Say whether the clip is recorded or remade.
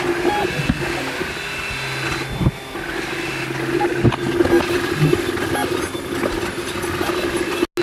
recorded